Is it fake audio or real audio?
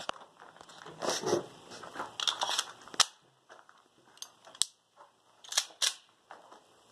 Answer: real